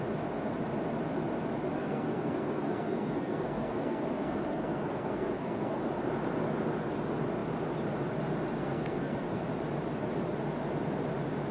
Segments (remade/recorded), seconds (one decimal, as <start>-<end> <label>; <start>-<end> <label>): 0.0-1.8 recorded; 1.8-5.8 remade; 5.8-8.6 recorded; 8.6-9.4 remade; 9.4-11.5 recorded